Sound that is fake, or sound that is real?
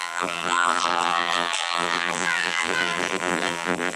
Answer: fake